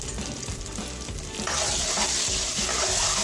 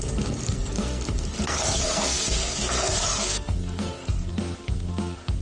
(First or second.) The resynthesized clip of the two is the second